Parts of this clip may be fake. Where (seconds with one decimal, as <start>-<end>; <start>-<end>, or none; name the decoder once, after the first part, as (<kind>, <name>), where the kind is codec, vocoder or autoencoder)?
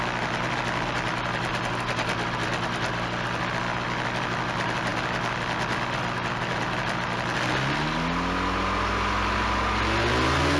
none